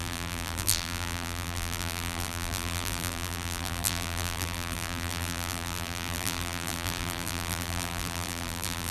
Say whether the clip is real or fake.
fake